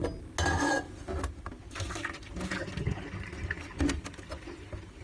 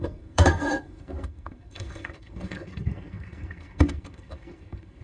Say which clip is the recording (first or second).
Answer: first